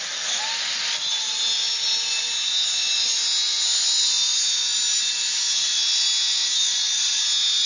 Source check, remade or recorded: recorded